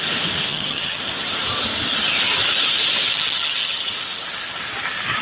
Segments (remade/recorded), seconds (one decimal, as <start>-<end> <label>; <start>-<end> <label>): 0.0-0.5 recorded; 0.5-1.0 remade; 1.0-3.1 recorded; 3.1-3.9 remade; 3.9-5.2 recorded